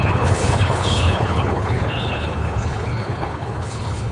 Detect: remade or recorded remade